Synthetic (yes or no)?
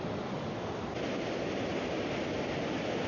no